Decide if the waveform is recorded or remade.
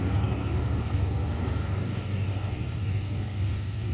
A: remade